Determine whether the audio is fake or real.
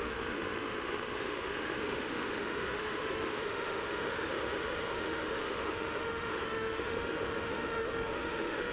fake